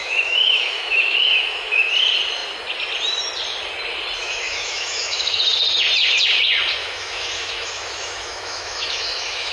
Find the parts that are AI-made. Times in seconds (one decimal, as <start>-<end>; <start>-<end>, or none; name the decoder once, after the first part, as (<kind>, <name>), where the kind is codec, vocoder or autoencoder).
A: 0.0-1.9 (autoencoder, DAC-VAE); 4.2-5.4; 6.8-9.5